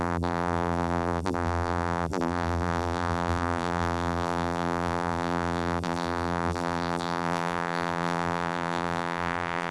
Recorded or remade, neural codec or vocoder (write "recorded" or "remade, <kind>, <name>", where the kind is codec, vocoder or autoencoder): remade, vocoder, BigVGAN v2